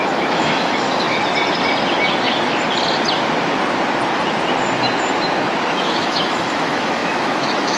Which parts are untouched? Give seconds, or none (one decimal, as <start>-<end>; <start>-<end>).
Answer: 1.2-5.6